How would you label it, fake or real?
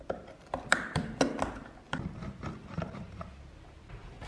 real